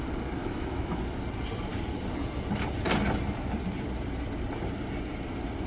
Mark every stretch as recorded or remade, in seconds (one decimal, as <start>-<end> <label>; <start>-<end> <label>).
0.0-0.4 recorded; 0.4-1.0 remade; 1.0-5.7 recorded